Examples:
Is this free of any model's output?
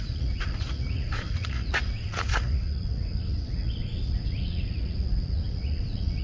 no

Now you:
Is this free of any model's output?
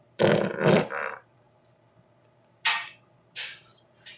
yes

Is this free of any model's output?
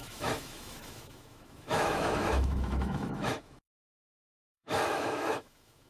no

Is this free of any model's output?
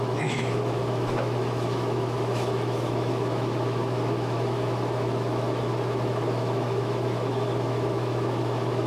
no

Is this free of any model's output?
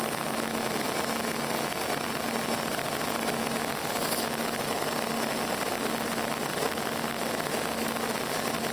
yes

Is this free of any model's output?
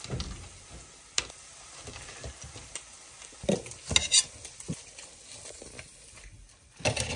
yes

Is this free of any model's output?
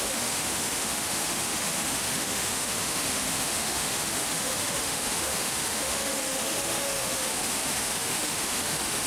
no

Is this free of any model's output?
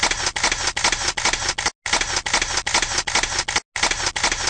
yes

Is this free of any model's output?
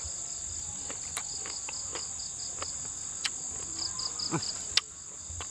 yes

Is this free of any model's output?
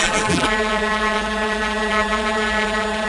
no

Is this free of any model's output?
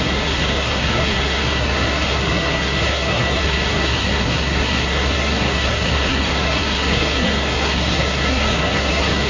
no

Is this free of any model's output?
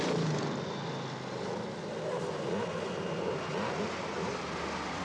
yes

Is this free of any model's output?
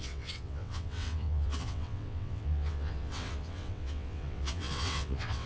no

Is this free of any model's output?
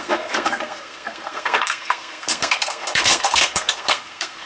no